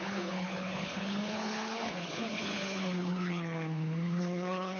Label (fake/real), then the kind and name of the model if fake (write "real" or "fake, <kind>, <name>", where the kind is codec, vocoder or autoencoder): fake, codec, HILCodec